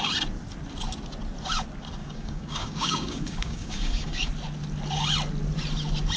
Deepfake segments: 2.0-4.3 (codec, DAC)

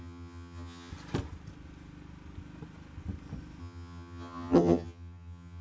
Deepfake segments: 0.0-0.9 (vocoder, HiFi-GAN); 3.6-5.6

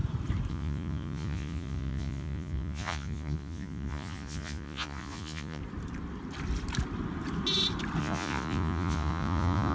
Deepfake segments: 0.5-5.6 (vocoder, Vocos); 8.0-9.7

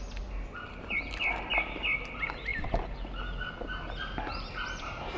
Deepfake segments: none